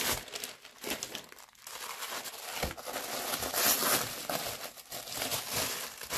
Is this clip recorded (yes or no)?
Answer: yes